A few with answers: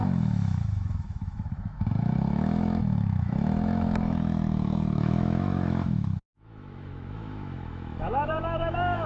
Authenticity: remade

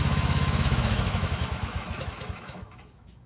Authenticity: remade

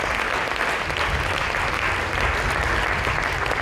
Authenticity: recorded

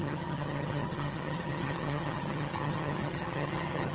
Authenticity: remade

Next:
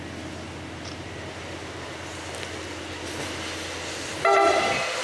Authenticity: recorded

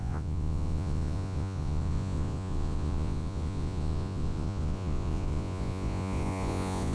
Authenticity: remade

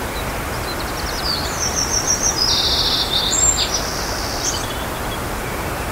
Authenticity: recorded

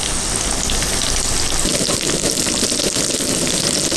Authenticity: recorded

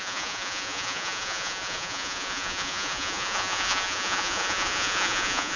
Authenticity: remade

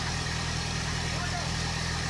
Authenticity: remade